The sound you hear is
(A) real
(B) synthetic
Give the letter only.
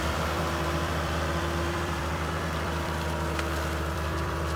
B